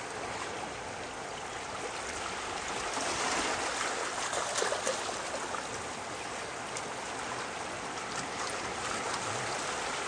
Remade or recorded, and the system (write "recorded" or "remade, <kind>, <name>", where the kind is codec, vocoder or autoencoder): recorded